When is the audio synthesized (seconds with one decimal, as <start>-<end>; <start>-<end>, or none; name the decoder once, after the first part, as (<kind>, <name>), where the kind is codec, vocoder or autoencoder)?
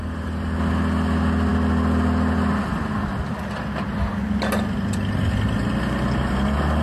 none